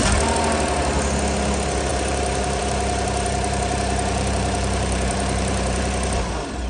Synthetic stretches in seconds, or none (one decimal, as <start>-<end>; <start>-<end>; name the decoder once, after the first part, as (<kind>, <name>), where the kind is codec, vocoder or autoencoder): 1.9-5.9 (vocoder, BigVGAN v2)